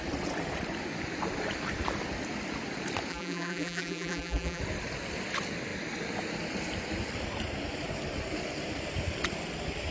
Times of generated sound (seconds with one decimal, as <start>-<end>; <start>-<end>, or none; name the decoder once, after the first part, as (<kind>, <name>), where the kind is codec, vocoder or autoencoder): 3.1-4.6 (vocoder, BigVGAN v2)